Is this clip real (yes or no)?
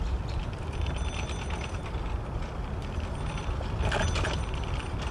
yes